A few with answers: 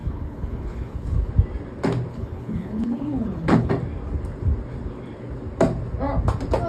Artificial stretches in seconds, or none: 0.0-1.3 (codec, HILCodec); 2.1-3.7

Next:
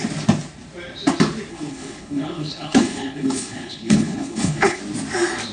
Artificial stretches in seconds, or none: 1.5-4.8 (codec, HILCodec)

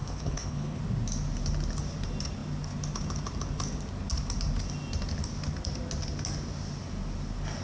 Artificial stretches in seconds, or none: 0.0-0.8 (codec, HILCodec)

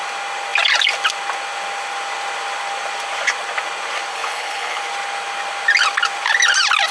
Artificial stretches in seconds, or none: 4.1-4.8 (codec, HILCodec)

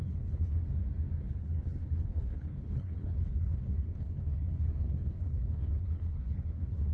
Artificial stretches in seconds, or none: 0.0-0.6 (codec, HILCodec); 1.2-6.9

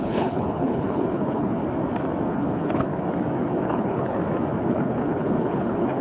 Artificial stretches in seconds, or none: 0.0-1.6 (codec, HILCodec); 2.3-2.9; 3.6-4.2; 4.7-6.0

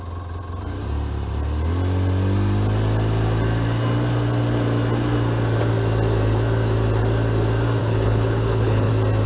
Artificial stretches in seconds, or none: 7.8-8.9 (codec, HILCodec)